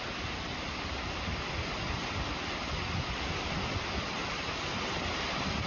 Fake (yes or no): no